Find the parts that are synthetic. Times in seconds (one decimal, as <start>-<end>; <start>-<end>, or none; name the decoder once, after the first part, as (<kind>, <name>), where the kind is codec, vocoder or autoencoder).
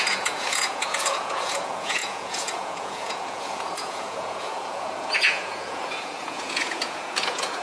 0.0-7.6 (vocoder, Vocos)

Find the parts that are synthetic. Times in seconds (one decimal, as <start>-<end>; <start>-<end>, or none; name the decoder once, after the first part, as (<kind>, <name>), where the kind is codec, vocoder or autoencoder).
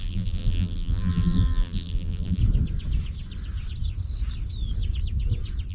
0.0-2.4 (vocoder, BigVGAN v2)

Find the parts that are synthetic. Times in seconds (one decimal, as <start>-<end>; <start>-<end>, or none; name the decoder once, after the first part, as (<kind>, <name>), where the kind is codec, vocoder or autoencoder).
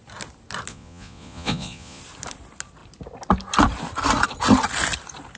0.7-2.0 (vocoder, Vocos)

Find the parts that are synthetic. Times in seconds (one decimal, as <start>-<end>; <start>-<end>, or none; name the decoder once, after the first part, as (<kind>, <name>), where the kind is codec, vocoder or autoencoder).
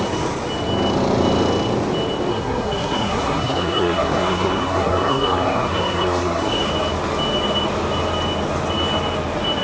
2.3-6.7 (codec, SNAC)